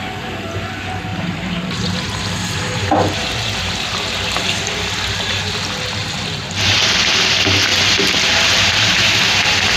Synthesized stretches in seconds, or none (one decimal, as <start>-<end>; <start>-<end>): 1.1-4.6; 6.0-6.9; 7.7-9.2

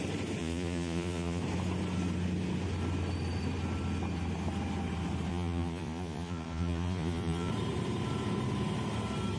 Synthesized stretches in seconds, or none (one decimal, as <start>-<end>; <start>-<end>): 0.4-1.4; 5.3-7.5

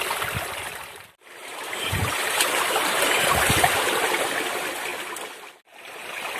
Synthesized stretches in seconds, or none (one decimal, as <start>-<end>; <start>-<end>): 1.4-4.3

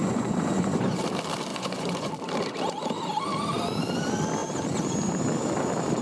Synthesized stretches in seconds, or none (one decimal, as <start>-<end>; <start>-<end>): 0.0-1.0; 1.5-2.1

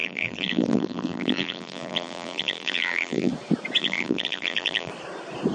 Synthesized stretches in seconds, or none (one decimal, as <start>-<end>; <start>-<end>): 0.0-3.3; 3.8-4.9